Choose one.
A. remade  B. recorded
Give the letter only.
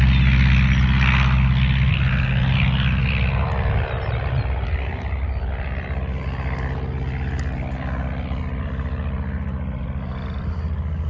B